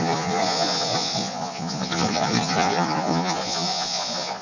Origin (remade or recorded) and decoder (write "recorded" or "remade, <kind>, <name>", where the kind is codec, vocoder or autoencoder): remade, vocoder, Vocos